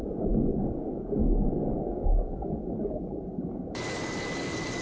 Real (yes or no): no